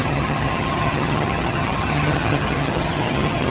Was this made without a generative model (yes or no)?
no